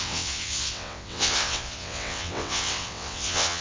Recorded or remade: remade